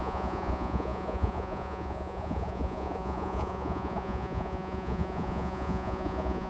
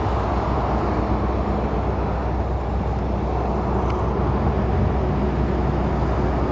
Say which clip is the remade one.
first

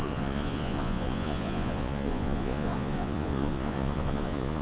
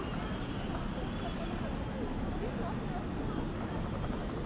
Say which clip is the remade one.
first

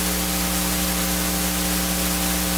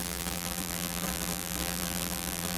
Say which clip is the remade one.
second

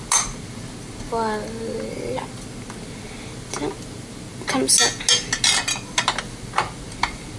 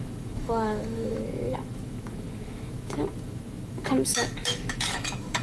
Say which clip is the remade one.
second